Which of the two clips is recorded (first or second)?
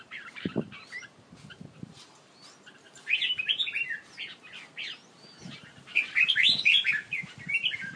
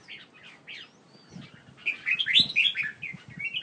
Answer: second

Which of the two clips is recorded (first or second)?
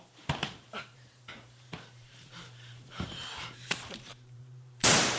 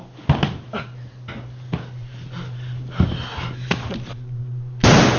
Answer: second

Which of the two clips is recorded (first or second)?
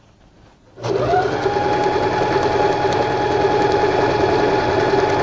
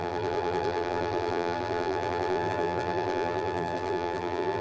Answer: first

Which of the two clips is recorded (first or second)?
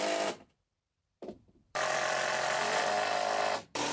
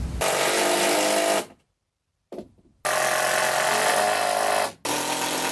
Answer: second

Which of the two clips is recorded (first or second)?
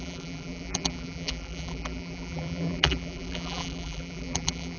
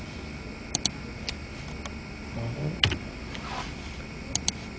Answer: second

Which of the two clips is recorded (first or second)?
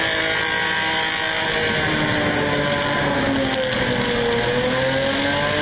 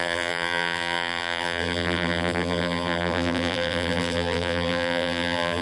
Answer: first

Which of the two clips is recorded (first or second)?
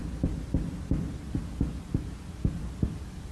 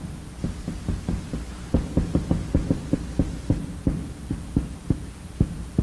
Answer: first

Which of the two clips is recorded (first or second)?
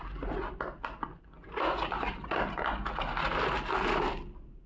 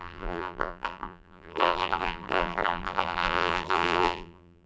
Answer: first